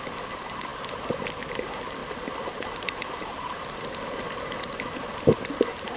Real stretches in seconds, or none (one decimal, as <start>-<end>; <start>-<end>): 0.0-6.0

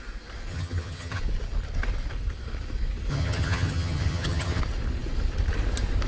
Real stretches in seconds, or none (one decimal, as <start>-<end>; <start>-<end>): 0.0-0.5; 1.2-3.1; 4.6-6.1

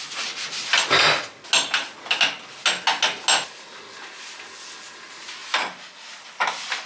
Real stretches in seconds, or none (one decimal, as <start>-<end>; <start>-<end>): 0.0-6.9

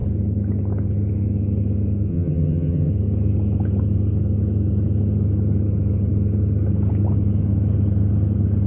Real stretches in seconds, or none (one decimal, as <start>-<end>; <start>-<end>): 0.0-2.1; 2.9-8.7

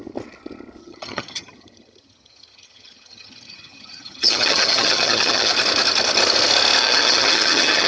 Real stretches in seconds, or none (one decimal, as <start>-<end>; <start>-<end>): 0.0-0.8; 5.5-6.8

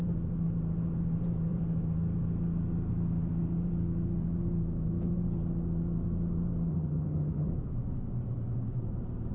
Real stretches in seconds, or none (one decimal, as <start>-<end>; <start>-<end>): 0.0-6.7; 7.5-9.3

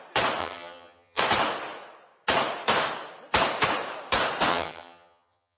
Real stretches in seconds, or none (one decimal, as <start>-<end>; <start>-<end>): 0.0-0.4; 1.2-4.5

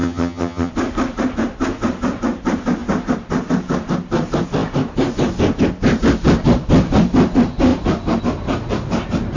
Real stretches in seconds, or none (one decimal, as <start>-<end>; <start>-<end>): 0.7-9.4